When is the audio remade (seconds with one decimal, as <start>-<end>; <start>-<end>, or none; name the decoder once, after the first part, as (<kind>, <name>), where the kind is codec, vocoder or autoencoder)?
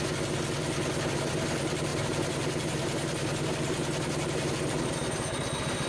1.9-4.5 (vocoder, BigVGAN v2)